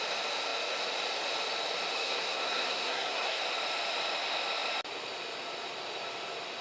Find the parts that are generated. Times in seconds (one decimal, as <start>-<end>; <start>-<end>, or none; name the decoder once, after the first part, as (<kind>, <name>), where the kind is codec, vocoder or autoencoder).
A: 1.9-3.4 (codec, SNAC)